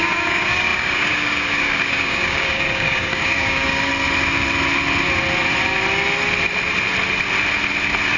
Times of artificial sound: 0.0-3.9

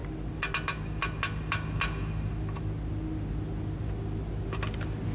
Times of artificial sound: none

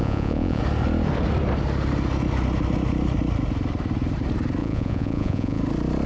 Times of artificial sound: 0.0-0.6; 4.6-5.6

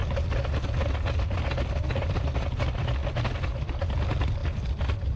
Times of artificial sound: 4.4-5.2